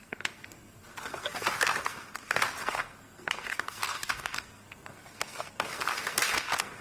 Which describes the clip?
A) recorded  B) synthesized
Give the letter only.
B